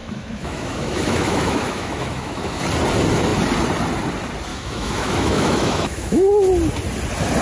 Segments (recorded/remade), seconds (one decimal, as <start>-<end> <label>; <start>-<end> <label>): 0.0-2.6 remade; 2.6-4.5 recorded; 4.5-6.3 remade; 6.3-7.4 recorded